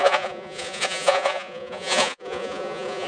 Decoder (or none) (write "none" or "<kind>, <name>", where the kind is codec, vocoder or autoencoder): vocoder, Vocos